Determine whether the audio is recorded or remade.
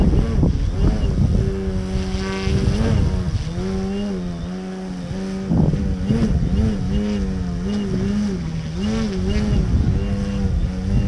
recorded